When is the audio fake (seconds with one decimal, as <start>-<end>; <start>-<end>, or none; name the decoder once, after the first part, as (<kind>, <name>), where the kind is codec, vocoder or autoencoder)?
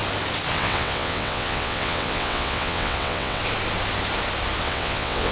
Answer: 0.5-3.4 (vocoder, WaveNeXt); 4.6-5.3